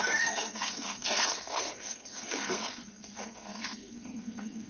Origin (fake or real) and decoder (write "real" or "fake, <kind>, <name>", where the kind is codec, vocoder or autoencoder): fake, codec, SNAC